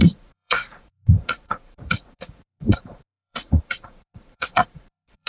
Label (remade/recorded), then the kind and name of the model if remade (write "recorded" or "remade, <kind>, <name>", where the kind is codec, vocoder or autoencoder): remade, vocoder, Vocos